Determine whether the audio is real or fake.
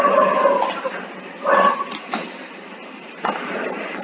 real